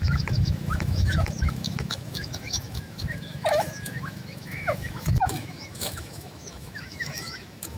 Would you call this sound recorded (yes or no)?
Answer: no